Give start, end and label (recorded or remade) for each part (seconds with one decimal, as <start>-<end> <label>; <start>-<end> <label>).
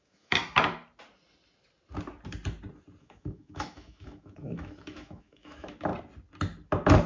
0.0-0.4 remade; 0.4-3.0 recorded; 3.0-5.9 remade; 5.9-7.1 recorded